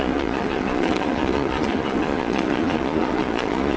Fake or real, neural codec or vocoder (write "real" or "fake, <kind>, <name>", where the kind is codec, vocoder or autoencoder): fake, vocoder, Vocos